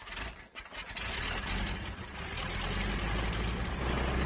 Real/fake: real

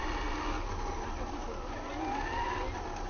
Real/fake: real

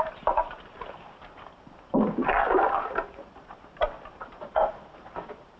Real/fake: fake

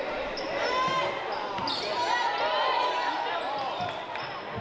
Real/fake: real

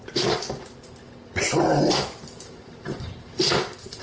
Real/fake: real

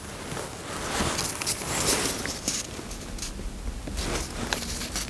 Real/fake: real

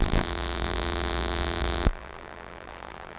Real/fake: fake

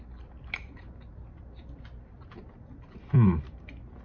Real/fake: fake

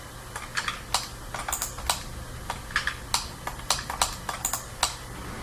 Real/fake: real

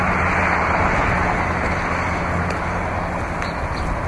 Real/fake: real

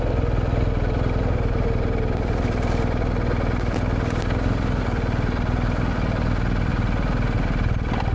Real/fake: real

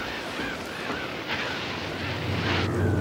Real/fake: real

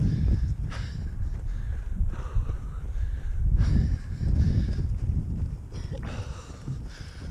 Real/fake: real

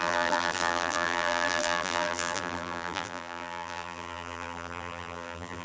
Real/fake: fake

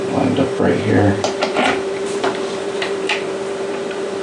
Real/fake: fake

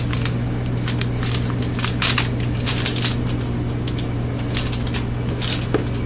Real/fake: real